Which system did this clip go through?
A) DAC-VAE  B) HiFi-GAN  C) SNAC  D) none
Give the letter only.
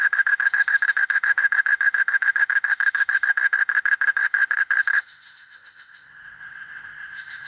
A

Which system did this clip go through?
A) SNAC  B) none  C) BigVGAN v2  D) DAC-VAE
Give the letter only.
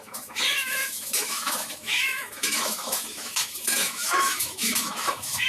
D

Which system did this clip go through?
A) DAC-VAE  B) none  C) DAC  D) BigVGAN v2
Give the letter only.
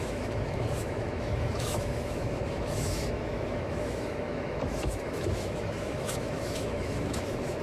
A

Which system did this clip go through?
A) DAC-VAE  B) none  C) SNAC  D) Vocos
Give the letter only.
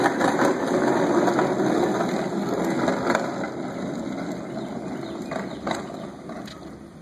B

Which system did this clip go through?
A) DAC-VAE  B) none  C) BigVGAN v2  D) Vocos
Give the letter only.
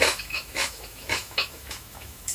A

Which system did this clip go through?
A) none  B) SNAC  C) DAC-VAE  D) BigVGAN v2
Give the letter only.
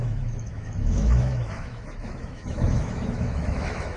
C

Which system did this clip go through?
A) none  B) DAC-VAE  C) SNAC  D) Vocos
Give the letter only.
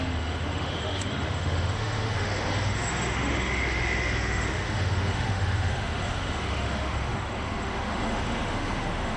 B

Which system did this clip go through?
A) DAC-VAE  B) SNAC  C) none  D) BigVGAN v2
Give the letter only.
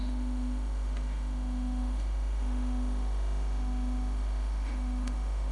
A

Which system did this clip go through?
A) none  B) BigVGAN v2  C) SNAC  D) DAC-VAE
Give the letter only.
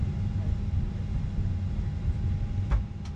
A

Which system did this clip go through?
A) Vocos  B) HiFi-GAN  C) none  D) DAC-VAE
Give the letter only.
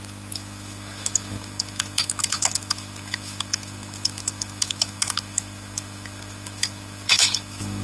D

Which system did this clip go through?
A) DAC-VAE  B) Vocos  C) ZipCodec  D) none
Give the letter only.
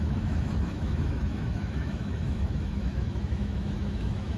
A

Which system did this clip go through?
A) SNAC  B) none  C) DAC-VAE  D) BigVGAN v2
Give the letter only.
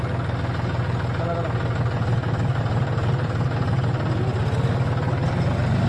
B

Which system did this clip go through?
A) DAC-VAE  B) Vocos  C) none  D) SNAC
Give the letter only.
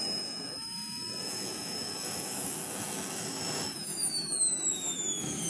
A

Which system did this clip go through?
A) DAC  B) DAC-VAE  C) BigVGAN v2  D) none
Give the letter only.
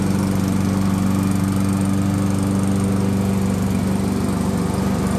D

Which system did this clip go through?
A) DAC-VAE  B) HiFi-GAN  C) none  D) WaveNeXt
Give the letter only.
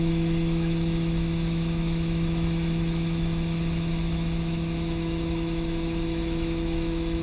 A